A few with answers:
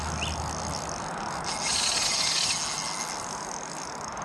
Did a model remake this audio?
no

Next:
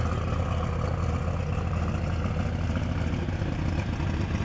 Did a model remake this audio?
no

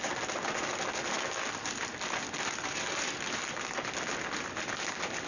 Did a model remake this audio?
no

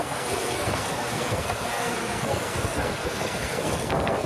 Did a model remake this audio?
yes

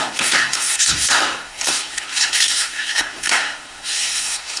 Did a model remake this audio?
yes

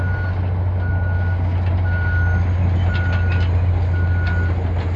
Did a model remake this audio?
no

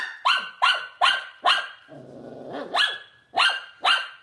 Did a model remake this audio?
no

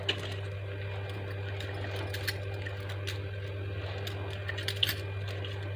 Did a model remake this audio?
no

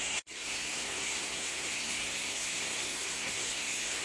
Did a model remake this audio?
yes